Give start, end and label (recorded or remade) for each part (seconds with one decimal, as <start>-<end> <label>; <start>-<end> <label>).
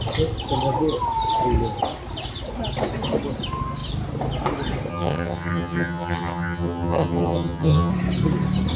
0.0-4.9 recorded; 4.9-7.9 remade; 7.9-8.8 recorded